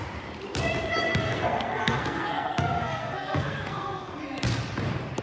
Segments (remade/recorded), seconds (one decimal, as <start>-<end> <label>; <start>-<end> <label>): 0.0-1.1 recorded; 1.1-4.2 remade; 4.2-5.2 recorded